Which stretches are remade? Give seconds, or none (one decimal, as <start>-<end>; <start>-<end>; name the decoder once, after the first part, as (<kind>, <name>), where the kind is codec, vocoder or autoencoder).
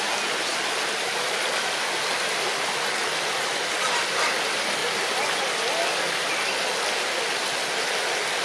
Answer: none